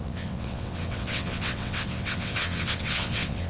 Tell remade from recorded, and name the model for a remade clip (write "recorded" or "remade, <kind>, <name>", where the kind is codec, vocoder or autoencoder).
remade, vocoder, WaveNeXt